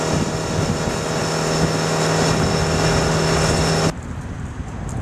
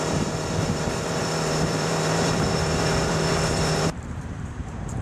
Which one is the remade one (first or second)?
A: second